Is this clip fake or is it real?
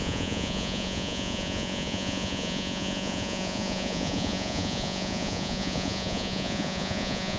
fake